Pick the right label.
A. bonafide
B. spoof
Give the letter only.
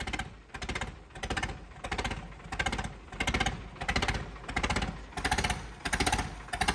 A